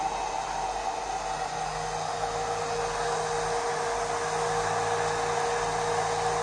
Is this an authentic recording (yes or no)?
yes